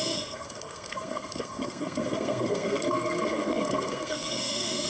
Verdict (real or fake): fake